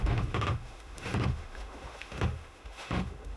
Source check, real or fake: fake